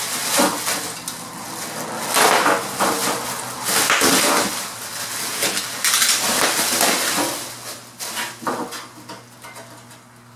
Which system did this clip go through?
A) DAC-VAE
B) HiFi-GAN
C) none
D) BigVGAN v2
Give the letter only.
C